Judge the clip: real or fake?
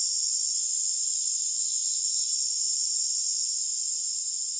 real